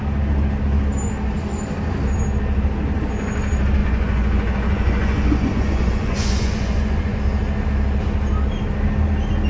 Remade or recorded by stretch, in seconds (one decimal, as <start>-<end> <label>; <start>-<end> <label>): 0.0-3.8 recorded; 3.8-7.2 remade; 7.2-9.5 recorded